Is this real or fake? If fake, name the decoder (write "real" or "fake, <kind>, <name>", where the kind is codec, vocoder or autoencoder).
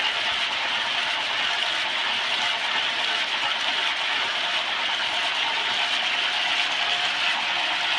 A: real